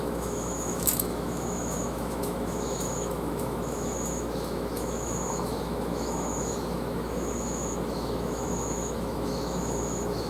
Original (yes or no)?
no